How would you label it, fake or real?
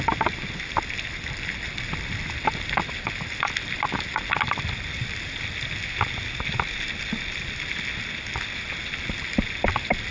real